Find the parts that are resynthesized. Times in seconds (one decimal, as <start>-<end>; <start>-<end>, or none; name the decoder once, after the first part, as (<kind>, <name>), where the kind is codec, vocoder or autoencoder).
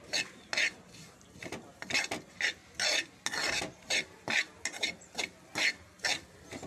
none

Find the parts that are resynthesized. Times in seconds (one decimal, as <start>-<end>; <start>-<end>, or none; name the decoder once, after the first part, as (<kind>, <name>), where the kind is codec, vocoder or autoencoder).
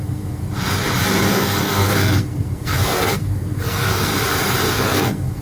0.0-0.4 (codec, SNAC); 1.3-4.1; 4.7-5.4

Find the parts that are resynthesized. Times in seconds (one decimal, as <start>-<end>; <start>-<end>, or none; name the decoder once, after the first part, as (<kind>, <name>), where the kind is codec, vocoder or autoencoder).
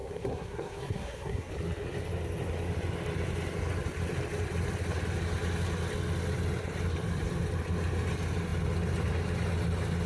0.0-1.5 (codec, SNAC)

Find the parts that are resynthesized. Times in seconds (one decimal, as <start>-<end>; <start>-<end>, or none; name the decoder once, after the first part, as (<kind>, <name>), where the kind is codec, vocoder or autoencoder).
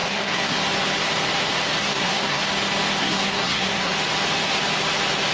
0.0-0.6 (codec, SNAC); 1.8-2.4; 3.0-3.9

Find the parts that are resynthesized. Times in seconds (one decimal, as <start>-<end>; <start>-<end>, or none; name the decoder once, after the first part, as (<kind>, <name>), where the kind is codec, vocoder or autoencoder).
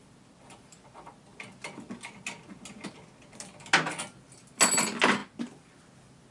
none